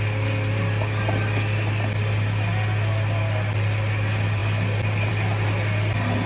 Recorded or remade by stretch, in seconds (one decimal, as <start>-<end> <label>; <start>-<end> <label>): 0.0-6.3 recorded